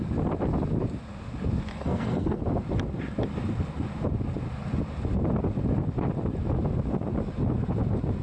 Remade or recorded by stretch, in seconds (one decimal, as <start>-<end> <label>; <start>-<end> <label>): 0.0-1.7 recorded; 1.7-2.4 remade; 2.4-8.2 recorded